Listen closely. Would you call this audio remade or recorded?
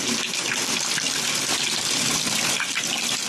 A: remade